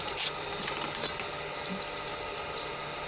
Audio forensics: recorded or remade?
recorded